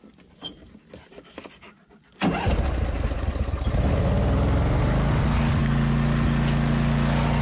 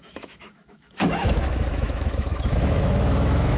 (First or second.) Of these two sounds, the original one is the first